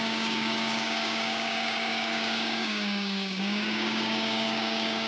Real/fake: fake